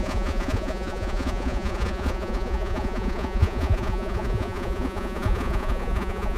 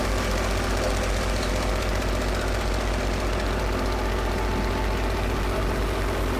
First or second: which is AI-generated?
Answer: first